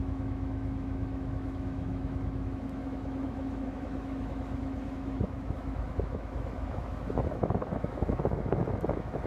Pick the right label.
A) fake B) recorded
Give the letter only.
A